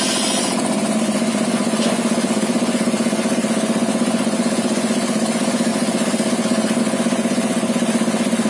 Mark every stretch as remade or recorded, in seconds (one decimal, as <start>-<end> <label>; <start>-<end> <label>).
0.0-8.5 remade